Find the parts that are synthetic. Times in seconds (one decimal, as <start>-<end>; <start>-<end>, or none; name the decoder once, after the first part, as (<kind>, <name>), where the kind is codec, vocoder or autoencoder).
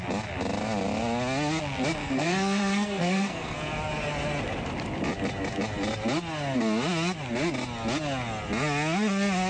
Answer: 2.0-3.6 (codec, SNAC)